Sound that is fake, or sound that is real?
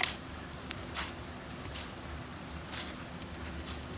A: fake